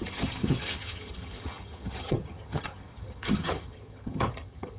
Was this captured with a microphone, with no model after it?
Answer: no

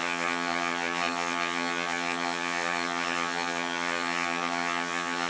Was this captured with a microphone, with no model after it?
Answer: no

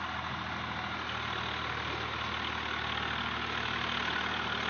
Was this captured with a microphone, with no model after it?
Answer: yes